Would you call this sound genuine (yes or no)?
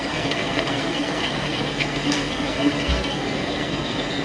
no